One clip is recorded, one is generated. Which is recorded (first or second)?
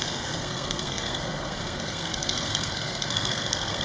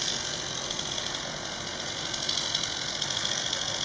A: second